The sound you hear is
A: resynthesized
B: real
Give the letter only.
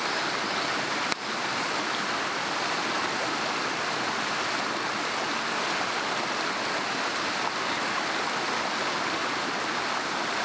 B